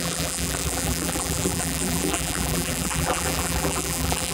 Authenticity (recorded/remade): remade